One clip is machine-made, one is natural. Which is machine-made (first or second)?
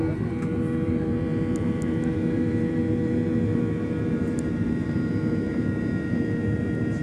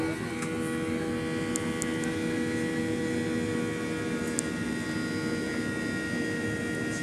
first